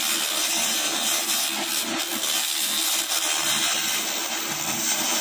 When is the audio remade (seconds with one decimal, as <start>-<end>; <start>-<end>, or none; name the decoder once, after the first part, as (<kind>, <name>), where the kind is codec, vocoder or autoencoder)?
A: 0.0-5.2 (vocoder, BigVGAN v2)